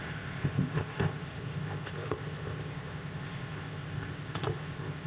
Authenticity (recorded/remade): remade